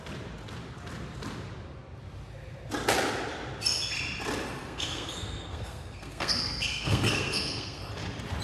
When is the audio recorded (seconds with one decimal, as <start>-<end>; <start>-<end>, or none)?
0.0-4.6; 7.8-8.4